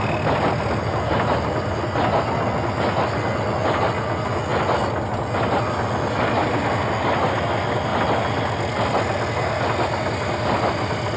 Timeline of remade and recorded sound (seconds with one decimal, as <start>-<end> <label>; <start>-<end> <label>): 0.0-11.2 recorded